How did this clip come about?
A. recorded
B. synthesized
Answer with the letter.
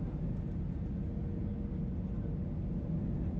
A